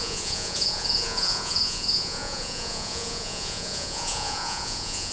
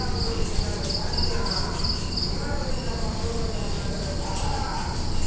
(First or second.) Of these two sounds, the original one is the second